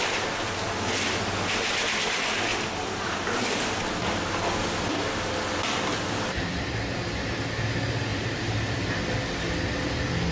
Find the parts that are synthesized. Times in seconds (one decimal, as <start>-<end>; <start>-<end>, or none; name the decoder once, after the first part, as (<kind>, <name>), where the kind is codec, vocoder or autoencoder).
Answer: 2.5-6.6 (vocoder, BigVGAN v2); 8.1-8.9